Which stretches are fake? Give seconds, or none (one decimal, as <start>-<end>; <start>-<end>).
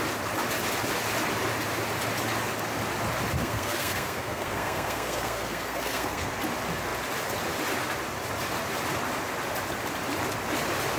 3.4-6.4